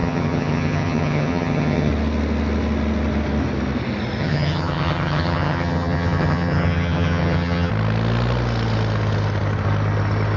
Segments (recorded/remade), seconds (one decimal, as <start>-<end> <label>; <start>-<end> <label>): 0.0-1.9 remade; 1.9-4.2 recorded; 4.2-7.7 remade; 7.7-10.4 recorded